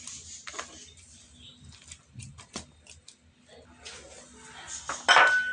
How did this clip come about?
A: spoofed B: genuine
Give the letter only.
B